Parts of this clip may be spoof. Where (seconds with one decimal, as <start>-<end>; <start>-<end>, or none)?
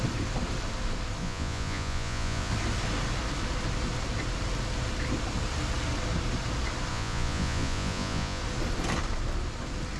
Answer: 1.2-2.5; 6.9-8.4